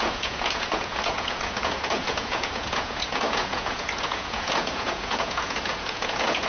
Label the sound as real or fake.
fake